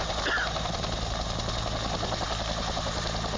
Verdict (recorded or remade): recorded